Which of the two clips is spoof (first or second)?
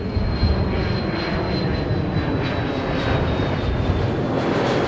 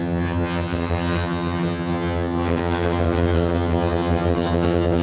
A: second